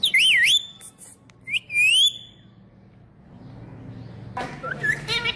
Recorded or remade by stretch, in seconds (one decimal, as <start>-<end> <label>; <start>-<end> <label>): 0.0-5.4 recorded